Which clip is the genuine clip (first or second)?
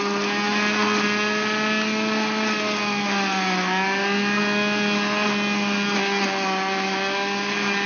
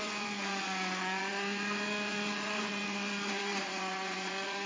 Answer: first